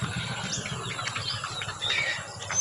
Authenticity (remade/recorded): recorded